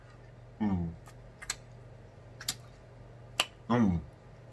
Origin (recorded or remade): recorded